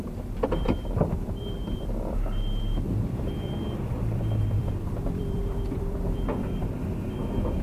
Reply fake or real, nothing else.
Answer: fake